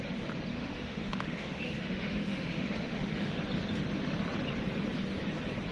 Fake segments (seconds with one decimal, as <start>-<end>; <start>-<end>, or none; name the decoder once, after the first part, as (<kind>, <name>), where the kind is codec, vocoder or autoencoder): 0.5-3.4 (autoencoder, DAC-VAE)